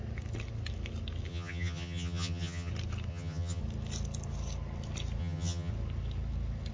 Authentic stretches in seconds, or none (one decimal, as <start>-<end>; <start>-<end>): 0.0-1.3; 2.7-3.1; 3.6-5.2; 5.7-6.7